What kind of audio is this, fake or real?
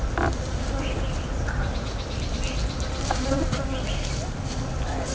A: real